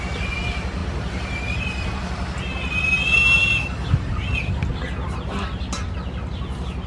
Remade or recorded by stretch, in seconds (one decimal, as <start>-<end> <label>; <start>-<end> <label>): 0.0-6.9 recorded